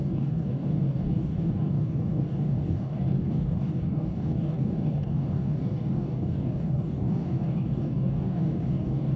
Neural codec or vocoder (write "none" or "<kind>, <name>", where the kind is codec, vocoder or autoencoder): codec, DAC